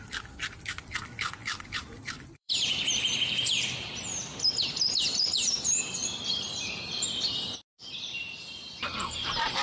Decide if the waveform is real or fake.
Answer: fake